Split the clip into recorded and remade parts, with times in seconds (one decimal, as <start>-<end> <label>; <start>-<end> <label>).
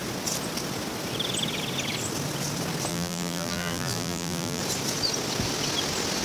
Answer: 0.0-2.9 recorded; 2.9-4.6 remade; 4.6-6.2 recorded